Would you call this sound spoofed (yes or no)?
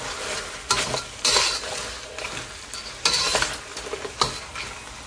no